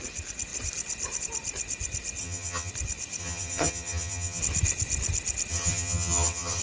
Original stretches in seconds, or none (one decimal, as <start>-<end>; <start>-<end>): 0.0-2.2; 2.7-3.2; 4.4-5.5